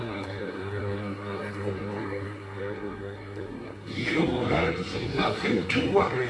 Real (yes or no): no